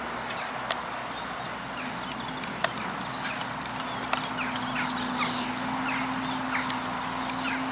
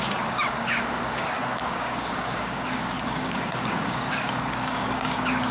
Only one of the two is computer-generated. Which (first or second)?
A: second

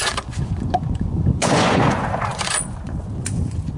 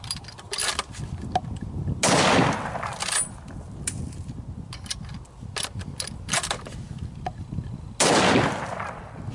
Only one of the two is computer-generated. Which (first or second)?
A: first